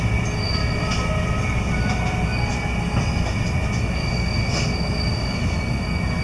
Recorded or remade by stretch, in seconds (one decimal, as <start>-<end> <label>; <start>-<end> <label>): 0.0-6.2 recorded

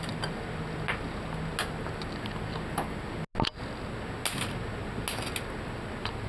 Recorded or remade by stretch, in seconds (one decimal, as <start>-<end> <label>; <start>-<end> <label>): 0.0-6.3 recorded

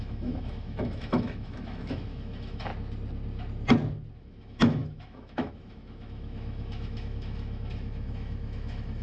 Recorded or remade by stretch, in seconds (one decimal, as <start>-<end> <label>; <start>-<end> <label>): 0.0-2.7 remade; 2.7-4.2 recorded; 4.2-9.0 remade